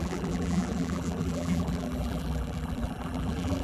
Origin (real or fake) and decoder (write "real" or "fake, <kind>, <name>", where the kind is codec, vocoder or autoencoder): fake, vocoder, BigVGAN v2